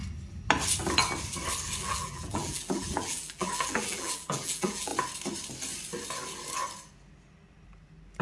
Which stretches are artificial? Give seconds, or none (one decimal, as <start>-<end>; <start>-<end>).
1.8-4.9

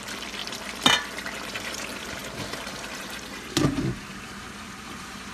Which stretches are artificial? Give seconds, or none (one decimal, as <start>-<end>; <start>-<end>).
0.0-0.4; 1.5-5.3

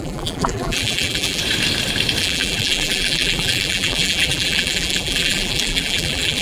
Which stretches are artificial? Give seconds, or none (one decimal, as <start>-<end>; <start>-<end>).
0.0-1.4; 2.2-6.4

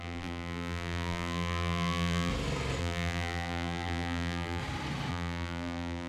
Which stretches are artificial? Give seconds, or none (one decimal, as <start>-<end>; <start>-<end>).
0.0-2.3; 2.8-4.6; 5.1-6.1

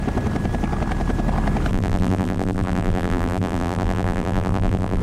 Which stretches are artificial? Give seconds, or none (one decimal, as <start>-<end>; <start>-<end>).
1.7-5.0

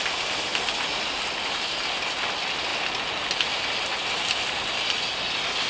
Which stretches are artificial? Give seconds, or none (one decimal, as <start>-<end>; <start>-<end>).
none

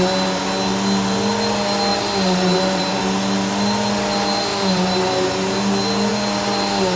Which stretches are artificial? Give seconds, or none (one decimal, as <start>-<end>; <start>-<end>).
1.9-3.0; 4.5-5.6